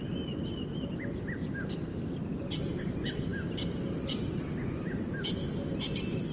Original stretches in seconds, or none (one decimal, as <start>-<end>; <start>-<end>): 0.0-6.3